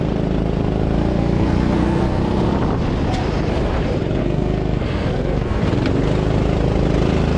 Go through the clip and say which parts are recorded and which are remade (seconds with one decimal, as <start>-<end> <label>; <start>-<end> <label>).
0.0-1.1 recorded; 1.1-2.2 remade; 2.2-4.2 recorded; 4.2-5.6 remade; 5.6-7.4 recorded